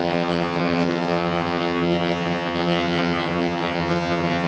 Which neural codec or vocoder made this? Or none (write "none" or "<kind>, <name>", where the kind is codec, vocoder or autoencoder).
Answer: vocoder, HiFi-GAN